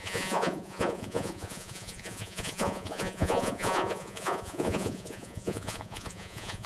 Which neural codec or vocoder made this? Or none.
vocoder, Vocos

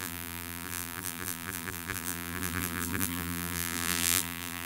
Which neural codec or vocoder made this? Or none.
vocoder, BigVGAN v2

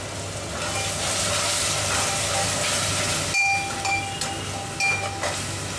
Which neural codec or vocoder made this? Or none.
none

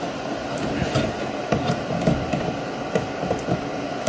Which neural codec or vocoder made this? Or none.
none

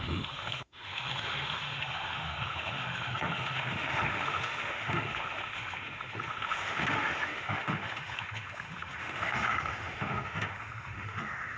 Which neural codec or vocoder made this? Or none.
autoencoder, DAC-VAE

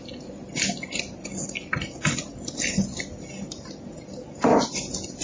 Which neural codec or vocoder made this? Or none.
none